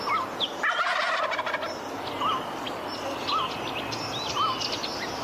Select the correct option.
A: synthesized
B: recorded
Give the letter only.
B